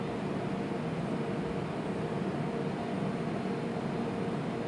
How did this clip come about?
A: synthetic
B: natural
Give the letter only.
B